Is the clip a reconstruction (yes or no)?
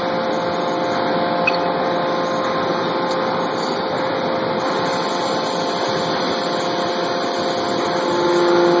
no